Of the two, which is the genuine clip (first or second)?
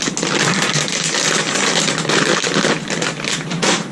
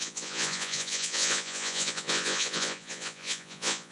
first